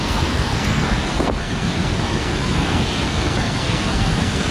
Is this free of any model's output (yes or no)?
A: no